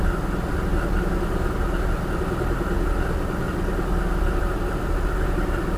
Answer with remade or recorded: recorded